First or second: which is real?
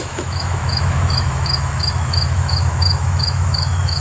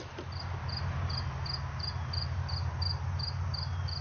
second